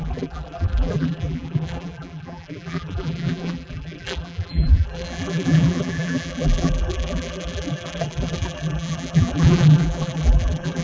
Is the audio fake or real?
fake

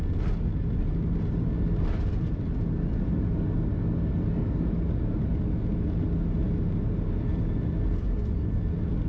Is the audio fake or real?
real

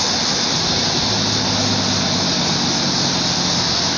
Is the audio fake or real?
real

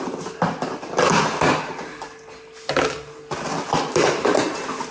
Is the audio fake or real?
real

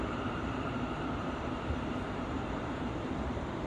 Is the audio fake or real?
fake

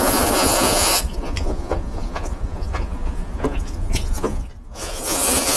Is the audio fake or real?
fake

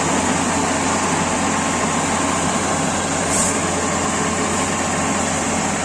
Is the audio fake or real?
real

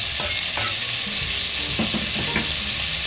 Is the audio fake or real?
real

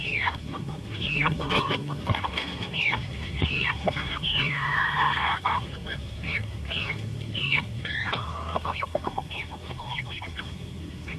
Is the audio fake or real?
fake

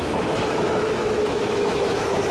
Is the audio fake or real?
fake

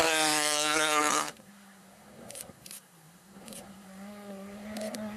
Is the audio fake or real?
fake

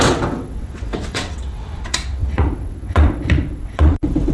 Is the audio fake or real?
fake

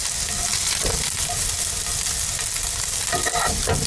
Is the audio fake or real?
real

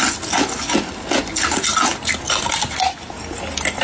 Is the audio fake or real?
real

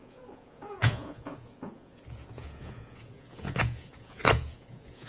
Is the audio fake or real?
fake